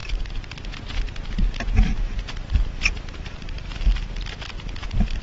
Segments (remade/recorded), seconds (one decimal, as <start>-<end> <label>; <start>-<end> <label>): 0.0-0.5 remade; 0.5-1.9 recorded; 1.9-5.2 remade